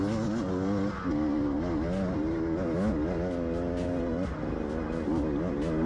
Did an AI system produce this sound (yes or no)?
no